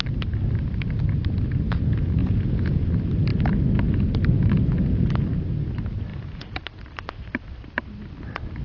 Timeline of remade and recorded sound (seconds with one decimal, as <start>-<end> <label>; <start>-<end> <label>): 0.0-2.2 recorded; 2.2-2.9 remade; 2.9-6.1 recorded; 6.1-6.6 remade; 6.6-8.6 recorded